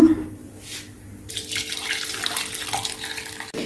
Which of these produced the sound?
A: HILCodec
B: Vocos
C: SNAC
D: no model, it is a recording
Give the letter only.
D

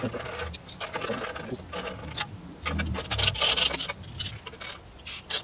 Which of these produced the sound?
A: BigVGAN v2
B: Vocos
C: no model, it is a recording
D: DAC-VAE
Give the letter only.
C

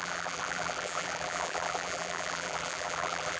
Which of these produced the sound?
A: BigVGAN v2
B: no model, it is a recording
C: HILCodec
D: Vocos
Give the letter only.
A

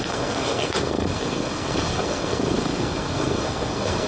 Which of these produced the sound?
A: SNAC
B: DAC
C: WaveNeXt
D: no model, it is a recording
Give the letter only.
A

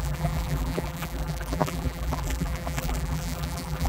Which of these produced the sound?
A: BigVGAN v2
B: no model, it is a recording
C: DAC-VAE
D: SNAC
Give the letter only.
A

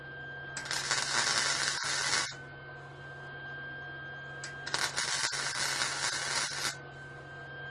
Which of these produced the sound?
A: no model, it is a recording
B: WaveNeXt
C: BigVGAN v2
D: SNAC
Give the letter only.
A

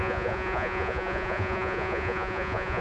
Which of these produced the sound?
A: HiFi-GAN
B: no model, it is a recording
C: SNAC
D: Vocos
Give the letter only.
D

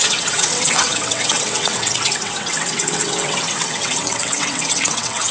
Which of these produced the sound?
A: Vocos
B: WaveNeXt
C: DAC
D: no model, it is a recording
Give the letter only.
B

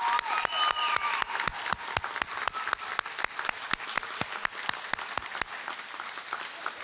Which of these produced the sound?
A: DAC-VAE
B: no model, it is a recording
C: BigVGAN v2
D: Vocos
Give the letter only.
B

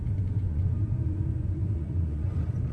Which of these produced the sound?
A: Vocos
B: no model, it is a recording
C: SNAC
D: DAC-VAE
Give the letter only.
A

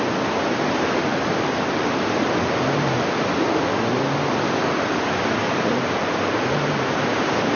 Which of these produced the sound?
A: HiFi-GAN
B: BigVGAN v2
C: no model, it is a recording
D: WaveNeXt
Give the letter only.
C